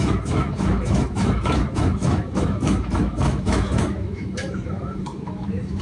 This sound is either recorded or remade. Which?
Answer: remade